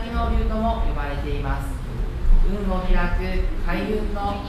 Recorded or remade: recorded